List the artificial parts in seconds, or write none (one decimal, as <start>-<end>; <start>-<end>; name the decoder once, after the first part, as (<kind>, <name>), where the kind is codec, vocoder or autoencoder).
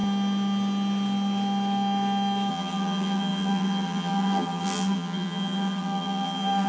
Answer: 2.5-6.7 (vocoder, BigVGAN v2)